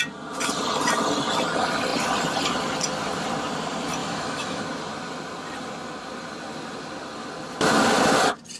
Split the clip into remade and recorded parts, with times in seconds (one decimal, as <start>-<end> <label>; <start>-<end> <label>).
0.0-4.0 recorded; 4.0-4.6 remade; 4.6-8.6 recorded